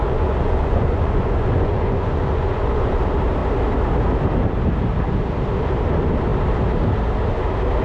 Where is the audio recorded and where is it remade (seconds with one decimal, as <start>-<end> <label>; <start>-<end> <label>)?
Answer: 0.0-3.0 remade; 3.0-7.8 recorded